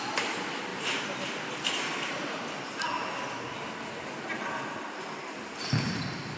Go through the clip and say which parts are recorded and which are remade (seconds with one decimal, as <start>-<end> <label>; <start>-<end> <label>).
0.0-6.4 recorded